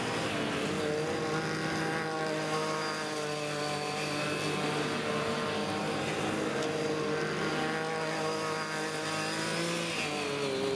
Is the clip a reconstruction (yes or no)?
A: no